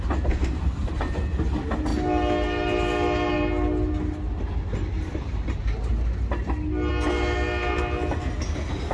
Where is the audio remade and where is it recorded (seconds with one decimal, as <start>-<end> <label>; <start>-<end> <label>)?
0.0-8.9 recorded